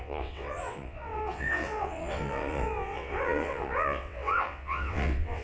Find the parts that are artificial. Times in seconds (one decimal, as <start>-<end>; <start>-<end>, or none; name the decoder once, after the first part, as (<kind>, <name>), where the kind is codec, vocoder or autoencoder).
0.0-5.4 (vocoder, WaveNeXt)